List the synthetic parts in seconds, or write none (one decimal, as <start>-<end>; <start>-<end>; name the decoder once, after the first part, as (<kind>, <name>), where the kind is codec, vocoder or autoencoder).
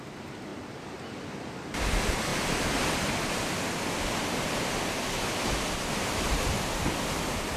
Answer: 0.5-1.0 (vocoder, BigVGAN v2)